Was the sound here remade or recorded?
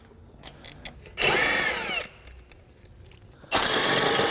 recorded